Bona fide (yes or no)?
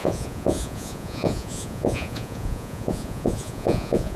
no